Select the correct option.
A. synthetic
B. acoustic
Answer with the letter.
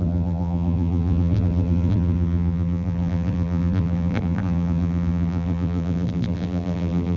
A